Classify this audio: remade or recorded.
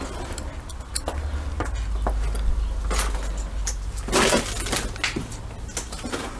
recorded